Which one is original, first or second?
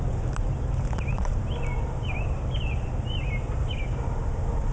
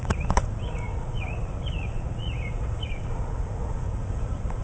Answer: first